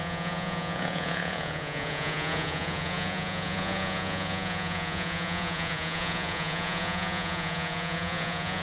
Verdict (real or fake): fake